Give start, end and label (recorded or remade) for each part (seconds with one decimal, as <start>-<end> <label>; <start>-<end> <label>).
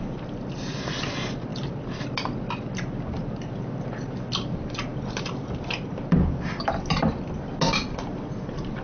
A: 0.0-8.8 recorded